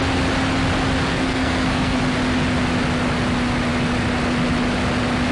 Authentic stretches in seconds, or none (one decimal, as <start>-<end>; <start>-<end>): 0.0-1.1; 2.0-5.3